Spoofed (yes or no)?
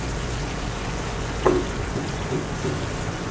yes